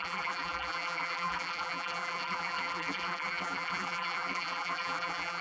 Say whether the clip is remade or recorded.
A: remade